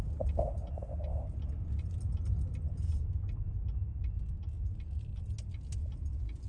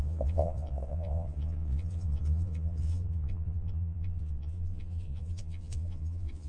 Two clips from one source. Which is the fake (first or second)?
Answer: second